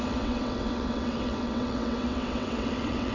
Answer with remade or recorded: remade